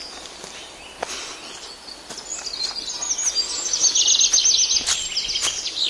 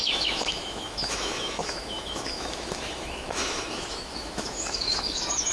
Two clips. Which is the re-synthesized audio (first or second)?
second